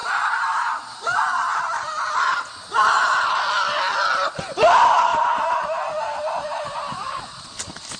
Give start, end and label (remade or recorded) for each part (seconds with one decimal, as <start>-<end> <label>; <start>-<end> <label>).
0.0-3.4 remade; 3.4-5.1 recorded; 5.1-7.2 remade; 7.2-8.0 recorded